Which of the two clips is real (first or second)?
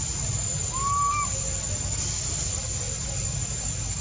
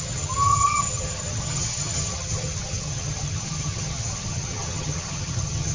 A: first